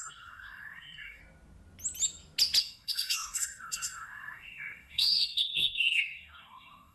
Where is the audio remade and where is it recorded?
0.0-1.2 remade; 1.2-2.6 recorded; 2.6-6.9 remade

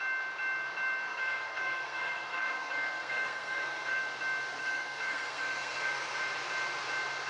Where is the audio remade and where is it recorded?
0.0-1.1 recorded; 1.1-4.0 remade; 4.0-4.6 recorded; 4.6-6.2 remade; 6.2-7.3 recorded